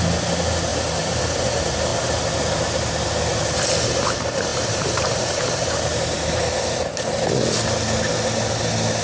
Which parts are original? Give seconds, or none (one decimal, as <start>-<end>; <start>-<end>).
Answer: 0.0-0.7; 1.2-4.5; 6.5-9.0